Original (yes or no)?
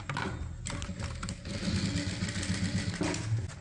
yes